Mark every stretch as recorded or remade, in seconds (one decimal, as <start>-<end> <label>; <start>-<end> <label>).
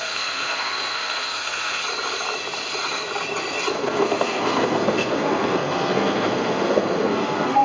0.0-1.8 remade; 1.8-3.7 recorded; 3.7-7.6 remade